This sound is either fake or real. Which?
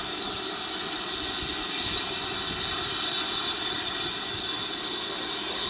real